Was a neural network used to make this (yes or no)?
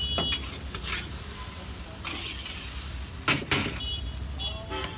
no